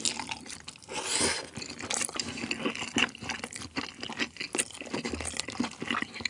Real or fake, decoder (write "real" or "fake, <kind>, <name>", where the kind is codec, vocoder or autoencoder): real